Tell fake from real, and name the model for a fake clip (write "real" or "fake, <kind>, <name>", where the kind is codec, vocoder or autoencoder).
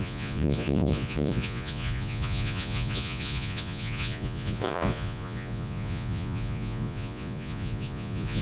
fake, vocoder, Vocos